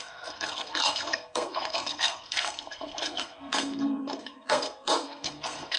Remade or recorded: remade